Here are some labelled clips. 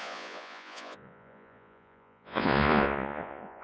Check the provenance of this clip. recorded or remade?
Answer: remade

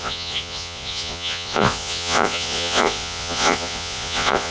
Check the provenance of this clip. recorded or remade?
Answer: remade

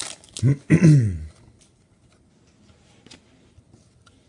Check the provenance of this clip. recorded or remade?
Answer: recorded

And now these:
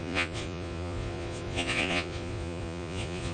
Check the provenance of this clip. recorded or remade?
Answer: remade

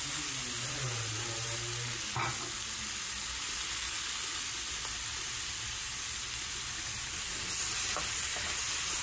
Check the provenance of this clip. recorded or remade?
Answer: recorded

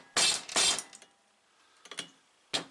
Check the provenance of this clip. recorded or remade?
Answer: recorded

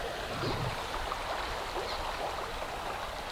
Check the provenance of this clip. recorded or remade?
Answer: recorded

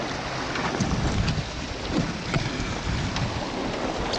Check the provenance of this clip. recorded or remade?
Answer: recorded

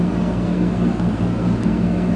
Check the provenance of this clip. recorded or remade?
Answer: remade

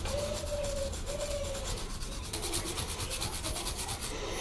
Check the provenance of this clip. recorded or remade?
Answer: recorded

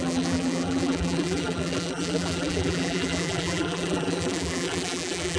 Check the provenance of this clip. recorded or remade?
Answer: remade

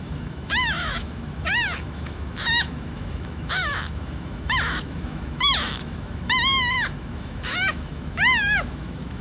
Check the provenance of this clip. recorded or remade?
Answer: remade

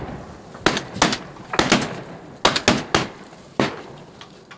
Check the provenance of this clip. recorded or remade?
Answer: recorded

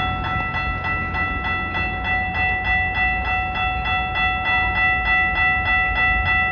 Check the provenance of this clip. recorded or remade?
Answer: recorded